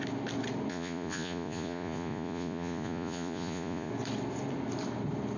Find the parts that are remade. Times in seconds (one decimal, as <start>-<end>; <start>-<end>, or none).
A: 0.7-3.9

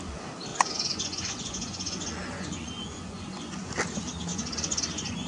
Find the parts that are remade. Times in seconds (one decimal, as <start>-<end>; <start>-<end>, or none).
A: 0.5-3.7; 4.3-5.3

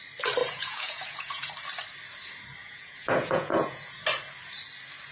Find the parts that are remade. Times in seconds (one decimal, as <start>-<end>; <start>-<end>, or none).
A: 0.4-1.5; 2.6-4.0

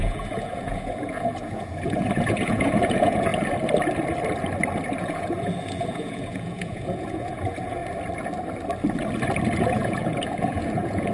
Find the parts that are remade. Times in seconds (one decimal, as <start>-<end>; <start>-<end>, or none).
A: 0.0-3.3; 5.0-7.8; 9.6-11.1

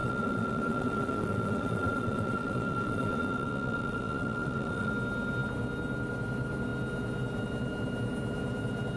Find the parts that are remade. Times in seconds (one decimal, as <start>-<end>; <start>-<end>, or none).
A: 0.0-4.9